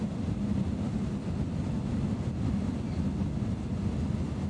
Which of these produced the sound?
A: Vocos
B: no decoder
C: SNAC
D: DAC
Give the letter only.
B